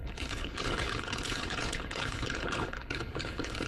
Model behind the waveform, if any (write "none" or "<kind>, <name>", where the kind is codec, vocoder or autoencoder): codec, HILCodec